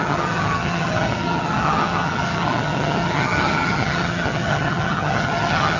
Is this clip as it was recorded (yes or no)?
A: no